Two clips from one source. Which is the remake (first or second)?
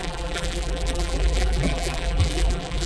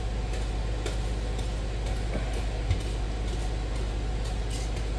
first